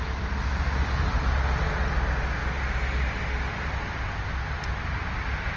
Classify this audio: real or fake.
real